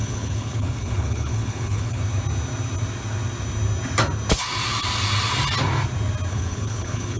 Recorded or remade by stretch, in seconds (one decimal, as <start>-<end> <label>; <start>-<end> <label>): 0.0-2.0 remade; 2.0-6.3 recorded; 6.3-7.2 remade